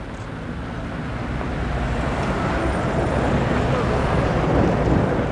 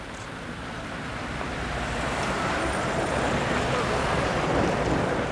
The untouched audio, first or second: first